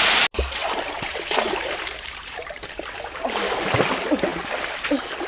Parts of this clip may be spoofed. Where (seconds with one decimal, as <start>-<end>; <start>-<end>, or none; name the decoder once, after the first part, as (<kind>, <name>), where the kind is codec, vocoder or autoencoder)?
0.6-3.8 (vocoder, BigVGAN v2)